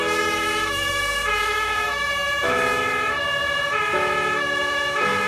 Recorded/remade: remade